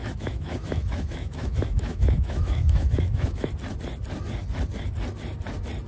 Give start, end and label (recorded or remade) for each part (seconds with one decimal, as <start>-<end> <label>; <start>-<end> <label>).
0.0-3.5 remade; 3.5-5.9 recorded

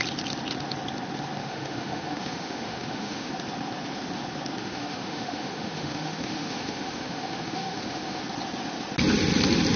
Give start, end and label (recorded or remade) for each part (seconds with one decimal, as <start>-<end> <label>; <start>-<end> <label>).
0.0-1.4 recorded; 1.4-3.3 remade; 3.3-4.6 recorded; 4.6-8.2 remade; 8.2-9.8 recorded

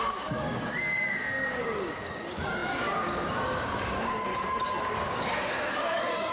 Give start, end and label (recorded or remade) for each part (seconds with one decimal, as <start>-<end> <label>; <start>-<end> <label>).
0.0-4.3 remade; 4.3-4.9 recorded; 4.9-6.3 remade

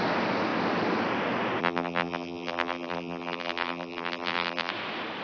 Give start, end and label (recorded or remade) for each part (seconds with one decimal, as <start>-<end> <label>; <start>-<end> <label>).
0.0-1.6 recorded; 1.6-4.7 remade; 4.7-5.2 recorded

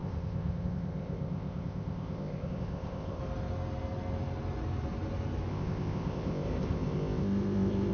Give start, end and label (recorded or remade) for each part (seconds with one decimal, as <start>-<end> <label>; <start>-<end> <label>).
0.0-3.2 remade; 3.2-5.5 recorded; 5.5-7.9 remade